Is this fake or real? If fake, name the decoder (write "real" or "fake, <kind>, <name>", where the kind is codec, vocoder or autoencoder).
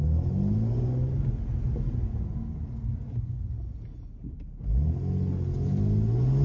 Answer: real